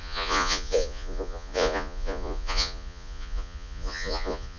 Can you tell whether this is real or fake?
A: fake